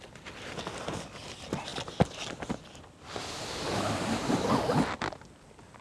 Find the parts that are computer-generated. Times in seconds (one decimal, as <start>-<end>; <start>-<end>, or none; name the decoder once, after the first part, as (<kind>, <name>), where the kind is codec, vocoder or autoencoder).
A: none